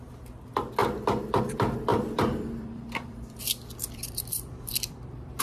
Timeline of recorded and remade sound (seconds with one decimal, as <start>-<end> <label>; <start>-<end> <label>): 0.0-1.9 recorded; 1.9-5.4 remade